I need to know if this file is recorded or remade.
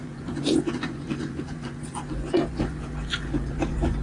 remade